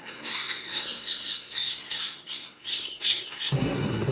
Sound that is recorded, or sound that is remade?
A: remade